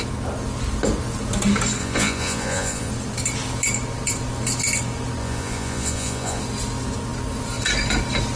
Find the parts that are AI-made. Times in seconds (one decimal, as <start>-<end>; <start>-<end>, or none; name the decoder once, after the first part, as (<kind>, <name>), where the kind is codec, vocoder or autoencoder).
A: 1.8-2.9 (vocoder, Vocos); 5.2-6.4